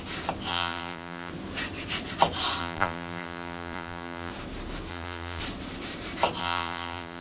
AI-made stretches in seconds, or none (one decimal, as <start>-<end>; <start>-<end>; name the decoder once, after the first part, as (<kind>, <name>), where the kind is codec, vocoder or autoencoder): 0.5-1.3 (vocoder, BigVGAN v2); 2.6-4.3; 4.9-5.4; 6.4-7.2